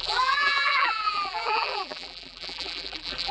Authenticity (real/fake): fake